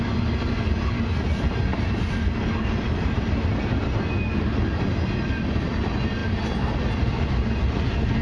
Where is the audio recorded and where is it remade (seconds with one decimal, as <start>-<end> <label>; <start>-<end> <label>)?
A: 0.0-8.2 recorded